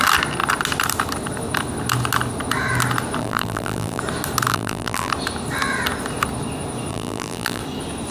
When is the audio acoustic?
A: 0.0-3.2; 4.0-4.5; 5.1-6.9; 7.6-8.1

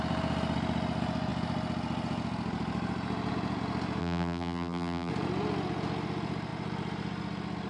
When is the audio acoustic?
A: 0.0-4.0; 5.1-7.7

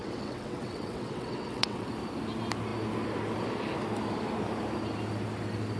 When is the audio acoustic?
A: 1.9-5.8

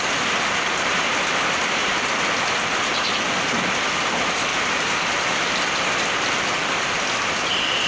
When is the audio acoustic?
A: 1.8-2.7; 4.5-5.2